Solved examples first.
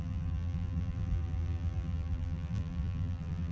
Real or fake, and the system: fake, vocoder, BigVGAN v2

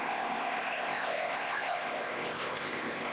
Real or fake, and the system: fake, codec, ZipCodec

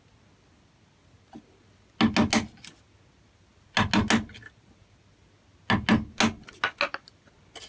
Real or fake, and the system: real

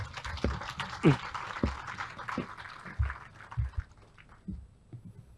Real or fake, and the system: real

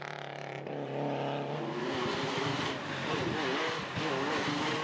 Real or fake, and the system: real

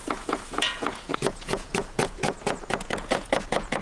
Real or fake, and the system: fake, vocoder, Vocos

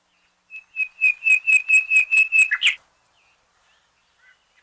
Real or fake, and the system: real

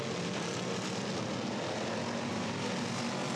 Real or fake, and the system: real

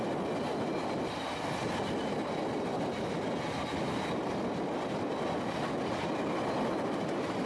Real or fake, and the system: real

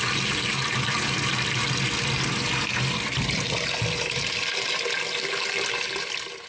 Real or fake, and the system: real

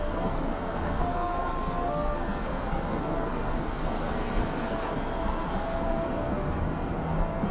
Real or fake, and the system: fake, codec, SNAC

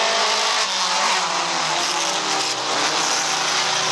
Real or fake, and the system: real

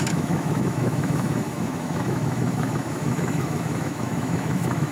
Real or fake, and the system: fake, autoencoder, DAC-VAE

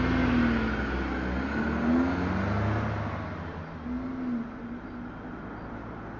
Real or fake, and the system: real